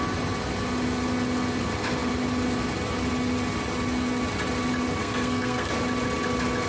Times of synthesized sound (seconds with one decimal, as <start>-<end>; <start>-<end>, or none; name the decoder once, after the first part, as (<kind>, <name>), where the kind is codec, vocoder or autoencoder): 5.0-5.7 (codec, SNAC)